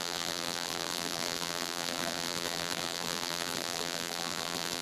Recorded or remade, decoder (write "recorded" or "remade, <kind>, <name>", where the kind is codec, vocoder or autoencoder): remade, vocoder, BigVGAN v2